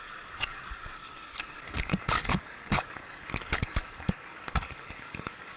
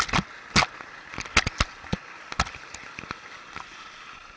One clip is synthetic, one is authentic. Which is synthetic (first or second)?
first